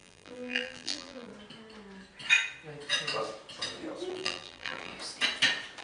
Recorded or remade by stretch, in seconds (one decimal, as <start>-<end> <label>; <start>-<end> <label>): 0.0-1.3 remade; 1.3-4.1 recorded; 4.1-4.9 remade; 4.9-5.8 recorded